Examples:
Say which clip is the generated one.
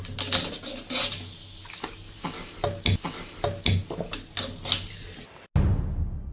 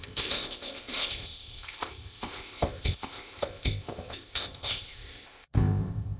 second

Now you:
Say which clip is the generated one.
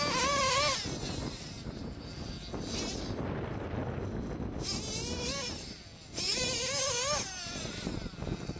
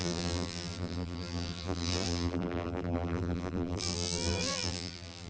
second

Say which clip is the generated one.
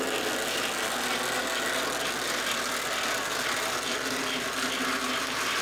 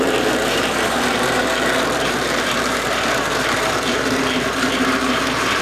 second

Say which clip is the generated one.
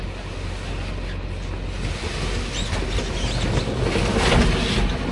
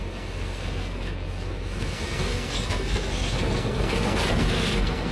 second